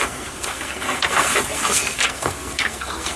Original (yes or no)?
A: no